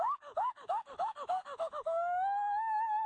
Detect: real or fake fake